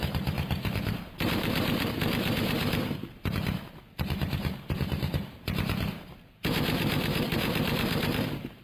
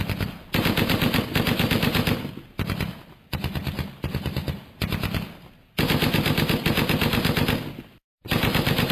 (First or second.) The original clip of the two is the second